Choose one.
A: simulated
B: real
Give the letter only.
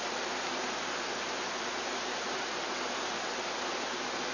B